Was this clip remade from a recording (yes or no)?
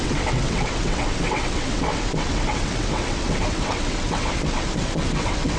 yes